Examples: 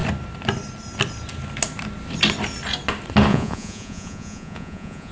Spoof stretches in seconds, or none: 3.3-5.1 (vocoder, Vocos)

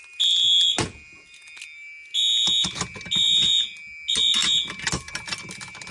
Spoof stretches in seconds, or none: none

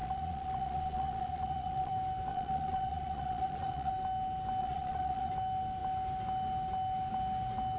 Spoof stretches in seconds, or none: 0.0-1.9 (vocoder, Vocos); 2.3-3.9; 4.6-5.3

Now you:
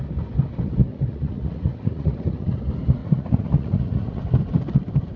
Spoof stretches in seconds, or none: 0.9-2.5 (vocoder, Vocos); 3.0-4.2

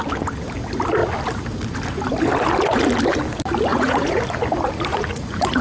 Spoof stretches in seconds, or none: 3.7-4.2 (vocoder, Vocos); 4.9-5.6

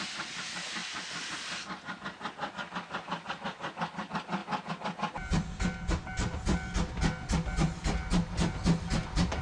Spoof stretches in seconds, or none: none